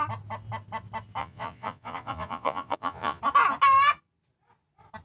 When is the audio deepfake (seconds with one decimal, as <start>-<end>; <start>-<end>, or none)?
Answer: 1.2-3.2